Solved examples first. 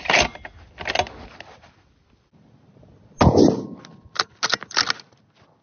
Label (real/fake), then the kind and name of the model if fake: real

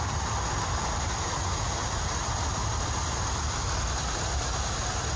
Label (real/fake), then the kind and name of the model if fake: real